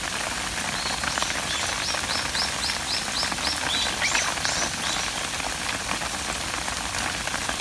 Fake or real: real